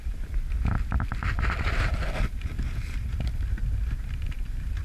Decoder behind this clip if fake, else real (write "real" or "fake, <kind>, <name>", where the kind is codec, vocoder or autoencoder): real